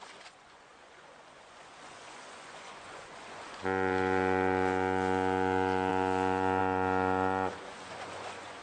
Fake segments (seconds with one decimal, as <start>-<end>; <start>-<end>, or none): 0.0-8.6